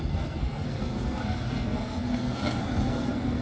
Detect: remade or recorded remade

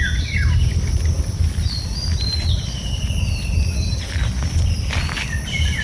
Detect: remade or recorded recorded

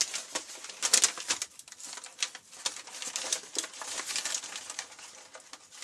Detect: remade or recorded recorded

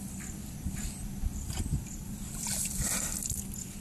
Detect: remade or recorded recorded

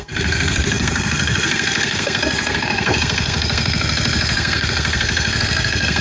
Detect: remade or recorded remade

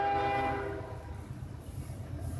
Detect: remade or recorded recorded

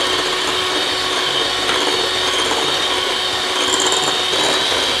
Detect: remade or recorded recorded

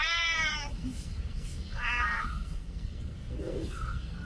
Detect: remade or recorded remade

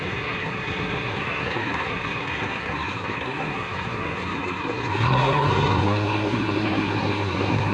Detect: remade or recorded remade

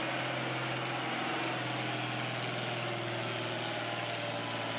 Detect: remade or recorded recorded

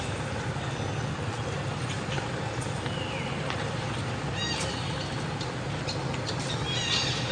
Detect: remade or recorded recorded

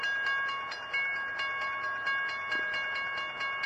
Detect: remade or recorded recorded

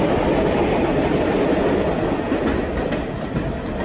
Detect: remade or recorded recorded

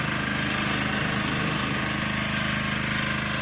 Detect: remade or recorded recorded